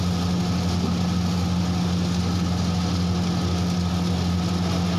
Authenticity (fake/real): real